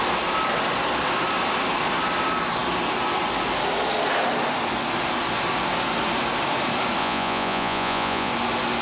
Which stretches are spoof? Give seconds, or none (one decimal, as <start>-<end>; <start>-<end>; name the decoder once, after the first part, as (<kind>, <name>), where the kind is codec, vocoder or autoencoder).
7.0-8.3 (vocoder, Vocos)